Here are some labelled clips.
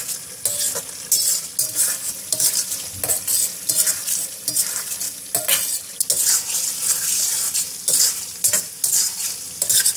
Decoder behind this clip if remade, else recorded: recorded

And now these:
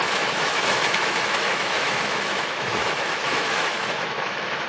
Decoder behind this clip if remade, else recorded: remade, autoencoder, DAC-VAE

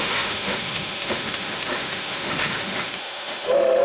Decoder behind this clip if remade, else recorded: remade, autoencoder, DAC-VAE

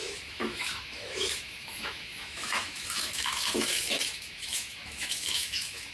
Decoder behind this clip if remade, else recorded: remade, autoencoder, DAC-VAE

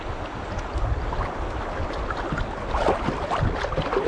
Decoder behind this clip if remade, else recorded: recorded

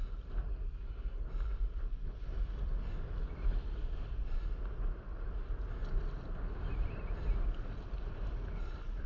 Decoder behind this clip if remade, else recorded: recorded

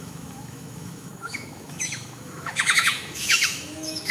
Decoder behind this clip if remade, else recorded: remade, autoencoder, DAC-VAE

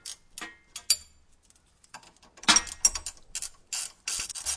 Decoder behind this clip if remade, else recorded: recorded